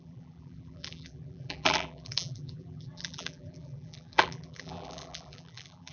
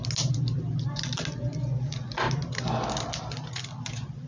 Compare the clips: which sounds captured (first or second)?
second